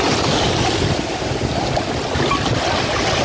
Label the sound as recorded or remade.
recorded